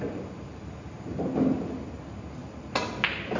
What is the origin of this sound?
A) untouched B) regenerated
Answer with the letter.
A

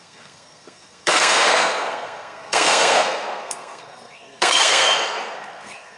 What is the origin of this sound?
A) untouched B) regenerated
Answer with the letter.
B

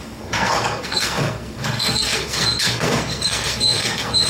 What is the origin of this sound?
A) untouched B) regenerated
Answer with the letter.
B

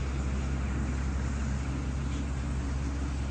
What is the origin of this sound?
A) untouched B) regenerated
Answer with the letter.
A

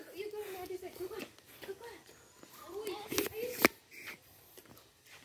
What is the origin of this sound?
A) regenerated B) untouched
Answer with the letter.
B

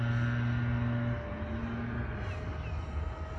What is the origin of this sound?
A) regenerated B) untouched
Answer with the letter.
B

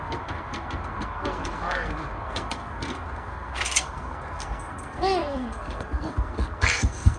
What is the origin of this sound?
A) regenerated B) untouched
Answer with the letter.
A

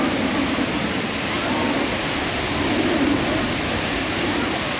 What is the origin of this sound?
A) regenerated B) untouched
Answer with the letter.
B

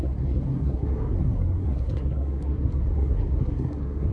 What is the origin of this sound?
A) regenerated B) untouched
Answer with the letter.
A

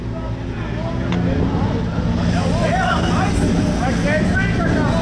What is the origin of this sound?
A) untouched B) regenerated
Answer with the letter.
A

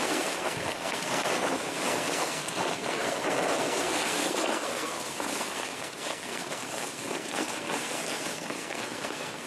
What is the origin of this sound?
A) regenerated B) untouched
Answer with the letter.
A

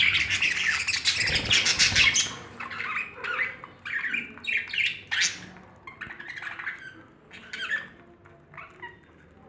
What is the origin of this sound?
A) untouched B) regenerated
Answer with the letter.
A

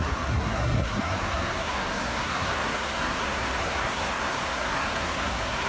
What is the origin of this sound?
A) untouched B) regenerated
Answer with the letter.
B